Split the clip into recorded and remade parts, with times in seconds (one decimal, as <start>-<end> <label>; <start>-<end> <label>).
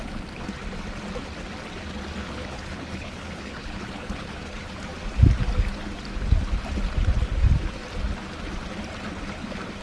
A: 0.0-2.2 recorded; 2.2-4.3 remade; 4.3-9.8 recorded